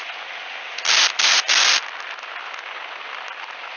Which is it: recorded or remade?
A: recorded